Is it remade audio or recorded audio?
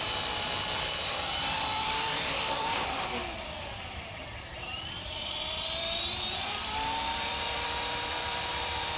remade